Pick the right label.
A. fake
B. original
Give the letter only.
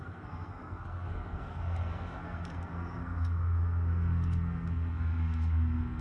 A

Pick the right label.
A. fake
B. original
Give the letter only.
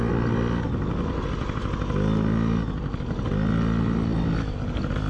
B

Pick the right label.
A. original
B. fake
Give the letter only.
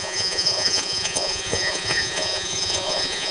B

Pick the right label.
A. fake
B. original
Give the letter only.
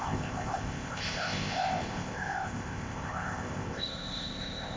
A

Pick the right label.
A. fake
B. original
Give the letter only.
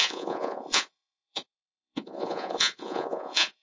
A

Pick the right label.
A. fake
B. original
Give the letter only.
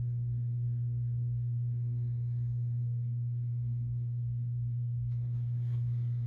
A